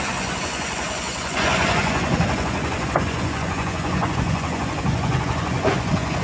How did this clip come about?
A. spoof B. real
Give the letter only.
A